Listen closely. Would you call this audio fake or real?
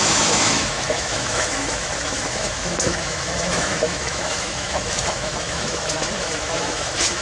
fake